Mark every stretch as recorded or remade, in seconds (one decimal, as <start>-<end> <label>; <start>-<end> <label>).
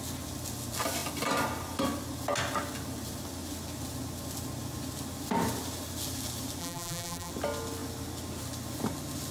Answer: 0.0-6.6 recorded; 6.6-7.3 remade; 7.3-9.3 recorded